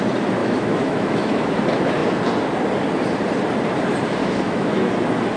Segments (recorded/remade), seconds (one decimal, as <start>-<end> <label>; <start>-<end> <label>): 0.0-0.4 recorded; 0.4-1.6 remade; 1.6-4.2 recorded; 4.2-4.9 remade; 4.9-5.4 recorded